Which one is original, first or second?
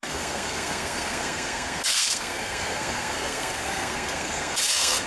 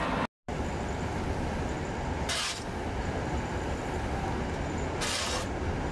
second